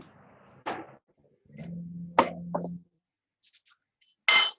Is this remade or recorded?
recorded